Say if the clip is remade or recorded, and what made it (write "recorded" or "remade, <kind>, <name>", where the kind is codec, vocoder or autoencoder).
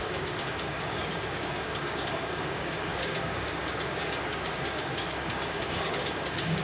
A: remade, codec, DAC